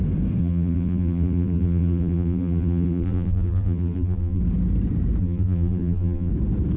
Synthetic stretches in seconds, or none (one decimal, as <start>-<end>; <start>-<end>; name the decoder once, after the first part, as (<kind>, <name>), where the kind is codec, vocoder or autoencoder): 0.4-4.4 (vocoder, BigVGAN v2); 5.2-6.3